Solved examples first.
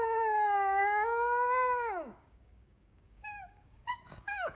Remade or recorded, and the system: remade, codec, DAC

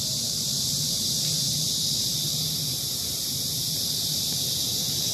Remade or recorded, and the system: remade, vocoder, BigVGAN v2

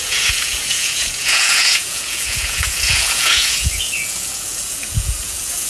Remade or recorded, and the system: remade, vocoder, Vocos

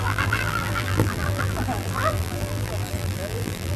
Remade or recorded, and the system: remade, vocoder, BigVGAN v2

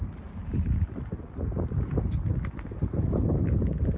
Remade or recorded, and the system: recorded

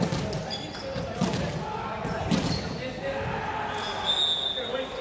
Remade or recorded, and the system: recorded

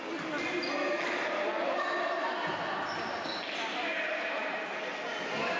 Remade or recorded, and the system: recorded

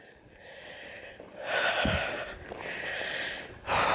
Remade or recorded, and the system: recorded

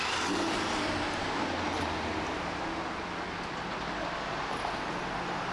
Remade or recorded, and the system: recorded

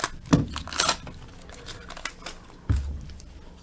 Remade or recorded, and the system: recorded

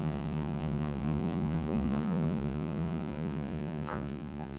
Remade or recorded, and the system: remade, vocoder, Vocos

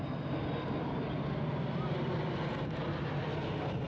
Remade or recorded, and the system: recorded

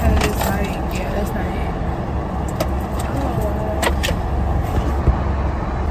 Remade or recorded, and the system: recorded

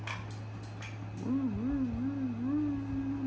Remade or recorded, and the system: recorded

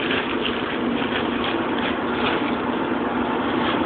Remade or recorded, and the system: recorded